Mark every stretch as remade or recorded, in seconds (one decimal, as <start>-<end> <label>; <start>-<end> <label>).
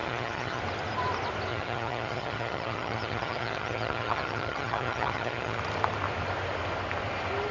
0.0-0.6 remade; 0.6-1.5 recorded; 1.5-5.6 remade; 5.6-7.5 recorded